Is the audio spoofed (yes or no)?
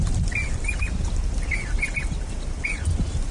no